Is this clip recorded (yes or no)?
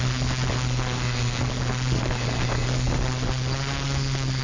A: yes